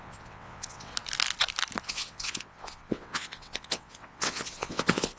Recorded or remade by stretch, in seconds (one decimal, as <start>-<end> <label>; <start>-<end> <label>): 0.0-0.9 remade; 0.9-1.8 recorded; 1.8-5.2 remade